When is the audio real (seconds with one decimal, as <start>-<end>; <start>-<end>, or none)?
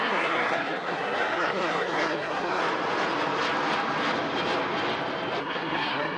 2.6-5.4